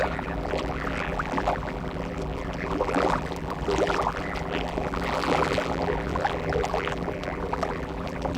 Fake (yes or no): yes